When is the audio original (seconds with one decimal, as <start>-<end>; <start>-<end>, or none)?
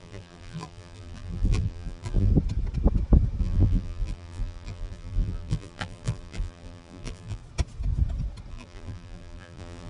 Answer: 2.3-3.4; 7.4-8.5